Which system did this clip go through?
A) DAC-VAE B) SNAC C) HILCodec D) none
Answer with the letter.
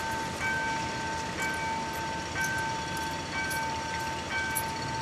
D